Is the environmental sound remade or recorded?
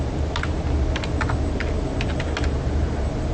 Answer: recorded